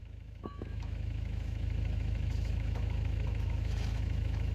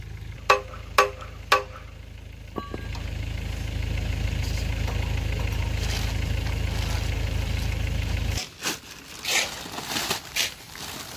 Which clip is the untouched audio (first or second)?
second